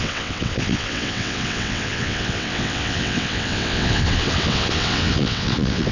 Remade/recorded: remade